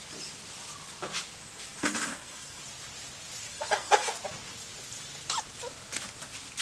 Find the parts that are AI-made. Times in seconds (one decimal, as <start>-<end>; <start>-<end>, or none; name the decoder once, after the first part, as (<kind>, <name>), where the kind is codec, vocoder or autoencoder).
1.3-2.6 (codec, SNAC); 3.5-4.1